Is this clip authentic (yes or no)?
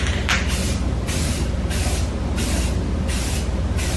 yes